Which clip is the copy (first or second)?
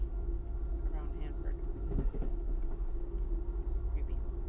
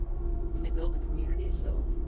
second